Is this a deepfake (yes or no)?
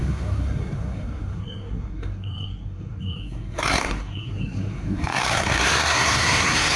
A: yes